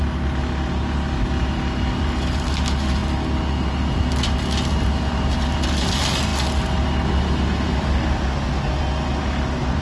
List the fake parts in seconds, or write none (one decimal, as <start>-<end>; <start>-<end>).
none